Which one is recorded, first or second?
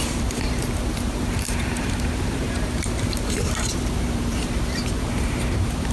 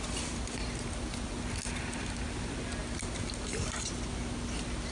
second